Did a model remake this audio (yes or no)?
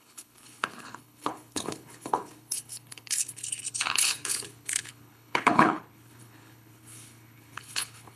yes